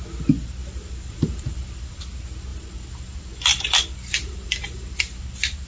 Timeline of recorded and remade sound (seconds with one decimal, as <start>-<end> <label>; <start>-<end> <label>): 0.0-0.6 recorded; 0.6-2.0 remade; 2.0-2.5 recorded; 2.5-5.2 remade; 5.2-5.7 recorded

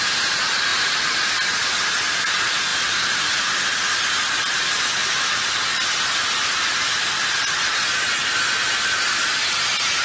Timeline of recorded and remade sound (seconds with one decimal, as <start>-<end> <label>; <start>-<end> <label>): 0.0-0.7 recorded; 0.7-1.3 remade; 1.3-2.7 recorded; 2.7-3.4 remade; 3.4-5.0 recorded; 5.0-5.6 remade; 5.6-10.0 recorded